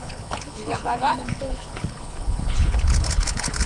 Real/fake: fake